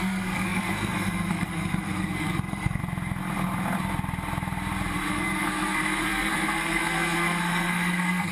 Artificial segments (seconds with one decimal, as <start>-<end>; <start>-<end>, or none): 0.0-2.8; 5.1-8.3